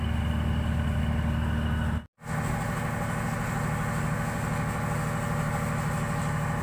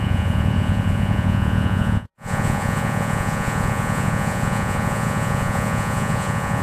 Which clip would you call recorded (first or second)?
first